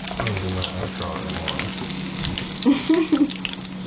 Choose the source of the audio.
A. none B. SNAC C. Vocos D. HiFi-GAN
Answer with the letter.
A